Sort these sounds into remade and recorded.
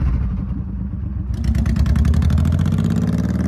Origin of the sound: recorded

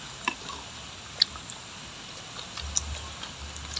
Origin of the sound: recorded